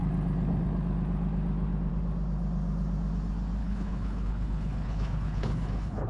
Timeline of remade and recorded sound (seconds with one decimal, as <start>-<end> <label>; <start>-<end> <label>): 0.0-3.6 recorded; 3.6-6.1 remade